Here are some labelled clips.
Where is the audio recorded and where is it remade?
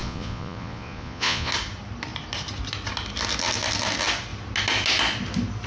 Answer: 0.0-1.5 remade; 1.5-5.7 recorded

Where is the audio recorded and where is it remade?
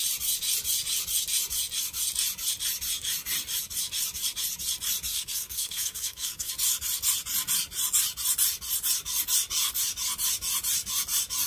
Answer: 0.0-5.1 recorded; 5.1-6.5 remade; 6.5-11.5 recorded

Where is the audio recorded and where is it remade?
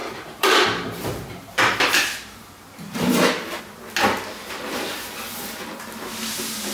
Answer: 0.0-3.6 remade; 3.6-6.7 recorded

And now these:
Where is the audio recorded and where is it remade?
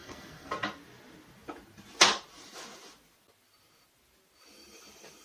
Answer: 0.0-0.5 remade; 0.5-5.2 recorded